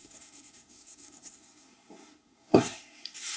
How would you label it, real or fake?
fake